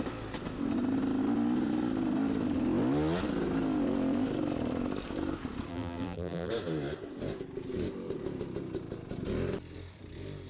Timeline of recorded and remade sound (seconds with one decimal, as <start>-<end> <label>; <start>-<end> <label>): 0.0-5.7 recorded; 5.7-6.5 remade; 6.5-10.5 recorded